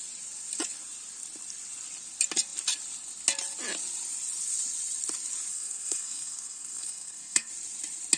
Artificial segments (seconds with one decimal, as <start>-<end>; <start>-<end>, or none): 5.5-7.5